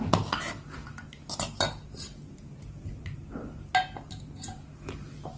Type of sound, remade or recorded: recorded